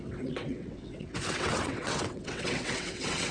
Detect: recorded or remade remade